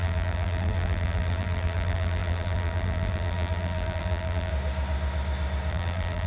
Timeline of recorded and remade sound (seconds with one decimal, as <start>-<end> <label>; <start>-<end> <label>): 0.0-4.5 remade; 4.5-5.7 recorded; 5.7-6.3 remade